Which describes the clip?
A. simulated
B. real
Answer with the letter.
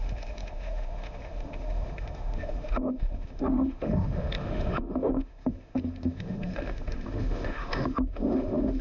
A